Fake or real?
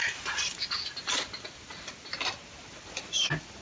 real